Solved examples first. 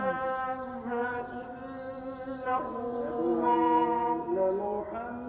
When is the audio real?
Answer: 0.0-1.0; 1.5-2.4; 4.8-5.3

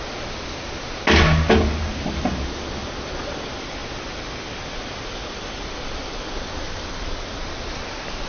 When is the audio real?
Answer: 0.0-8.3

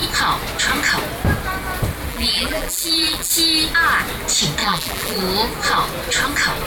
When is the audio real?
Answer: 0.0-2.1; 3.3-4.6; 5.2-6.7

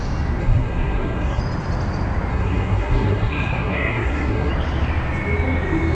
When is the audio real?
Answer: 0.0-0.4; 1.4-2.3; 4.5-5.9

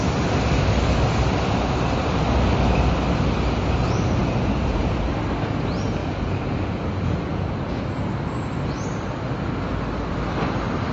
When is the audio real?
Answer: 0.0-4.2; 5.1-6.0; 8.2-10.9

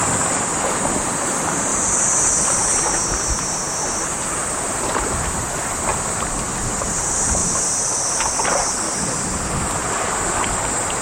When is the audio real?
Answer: 0.0-1.7; 2.8-5.9; 6.4-9.8; 10.5-11.0